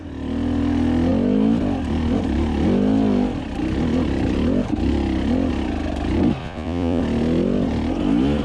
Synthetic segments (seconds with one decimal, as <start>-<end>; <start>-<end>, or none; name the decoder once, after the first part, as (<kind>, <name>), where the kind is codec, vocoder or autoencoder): 6.4-7.0 (vocoder, Vocos)